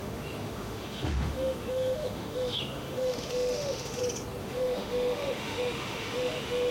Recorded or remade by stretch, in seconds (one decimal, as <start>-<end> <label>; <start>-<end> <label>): 0.0-4.0 remade; 4.0-4.4 recorded; 4.4-6.7 remade